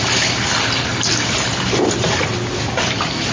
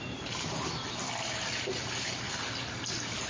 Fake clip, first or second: second